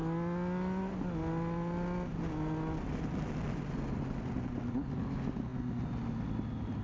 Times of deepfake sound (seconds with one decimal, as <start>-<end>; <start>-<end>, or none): none